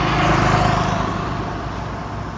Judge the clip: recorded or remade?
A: recorded